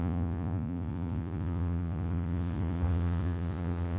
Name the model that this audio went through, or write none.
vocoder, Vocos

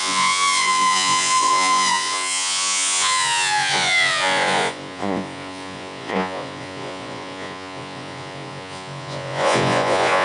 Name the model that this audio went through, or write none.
vocoder, Vocos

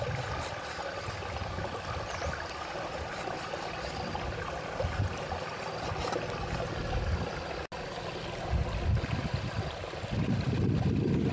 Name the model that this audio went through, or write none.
none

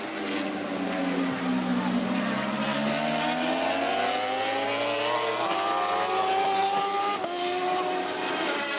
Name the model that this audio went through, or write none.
none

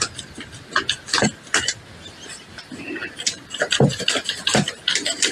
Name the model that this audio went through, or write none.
none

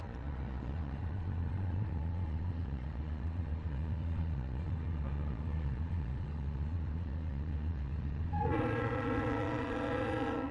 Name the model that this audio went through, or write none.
vocoder, Vocos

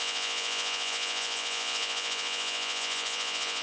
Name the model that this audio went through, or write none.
vocoder, Vocos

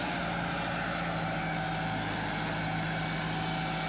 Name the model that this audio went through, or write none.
none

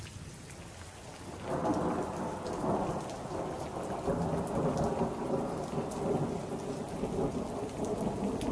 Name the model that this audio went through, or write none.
none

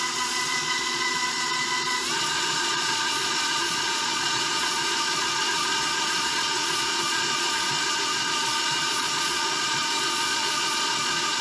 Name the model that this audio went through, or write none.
vocoder, Vocos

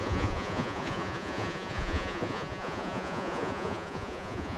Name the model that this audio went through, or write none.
vocoder, Vocos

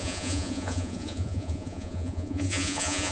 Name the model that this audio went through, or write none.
vocoder, Vocos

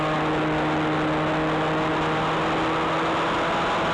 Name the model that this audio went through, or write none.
none